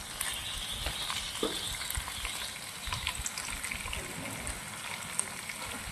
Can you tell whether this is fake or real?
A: real